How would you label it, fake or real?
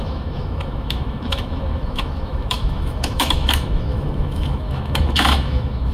fake